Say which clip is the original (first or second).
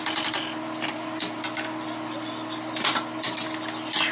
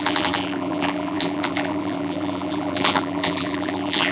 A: first